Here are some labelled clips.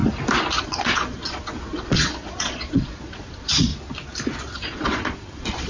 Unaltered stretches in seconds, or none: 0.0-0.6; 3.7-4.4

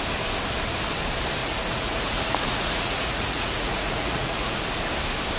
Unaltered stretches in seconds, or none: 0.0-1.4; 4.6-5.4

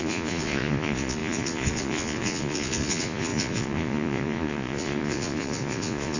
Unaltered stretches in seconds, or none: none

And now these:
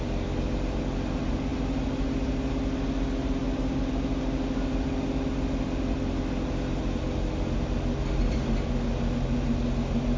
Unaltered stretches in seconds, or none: 0.0-10.2

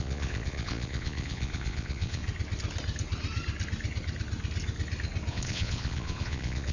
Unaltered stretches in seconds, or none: 2.2-5.3

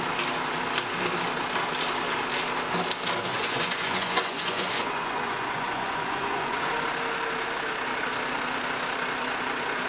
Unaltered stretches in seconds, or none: 0.0-3.3; 6.7-9.9

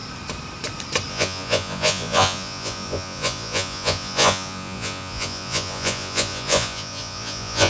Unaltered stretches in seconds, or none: 0.0-1.1